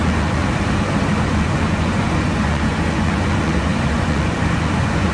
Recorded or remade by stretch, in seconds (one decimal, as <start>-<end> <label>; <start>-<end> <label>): 0.0-0.4 remade; 0.4-1.2 recorded; 1.2-5.1 remade